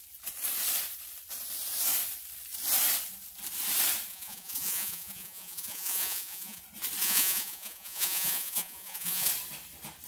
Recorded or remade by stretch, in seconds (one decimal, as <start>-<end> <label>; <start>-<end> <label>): 0.0-4.1 recorded; 4.1-6.6 remade; 6.6-7.0 recorded; 7.0-9.3 remade; 9.3-10.1 recorded